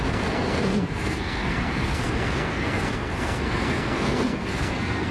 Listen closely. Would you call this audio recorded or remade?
remade